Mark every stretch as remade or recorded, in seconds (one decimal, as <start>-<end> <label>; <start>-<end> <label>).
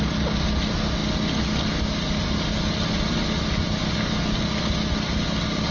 0.0-5.7 recorded